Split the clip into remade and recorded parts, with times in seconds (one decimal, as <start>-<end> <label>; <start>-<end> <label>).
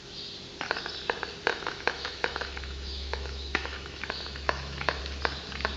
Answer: 0.0-1.5 recorded; 1.5-5.0 remade; 5.0-5.8 recorded